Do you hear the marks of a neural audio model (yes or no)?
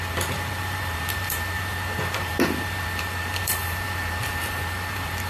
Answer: yes